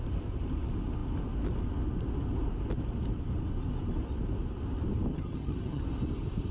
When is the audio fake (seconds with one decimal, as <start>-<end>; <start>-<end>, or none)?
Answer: 5.1-5.8